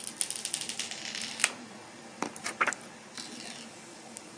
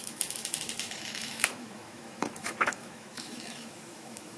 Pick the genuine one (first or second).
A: first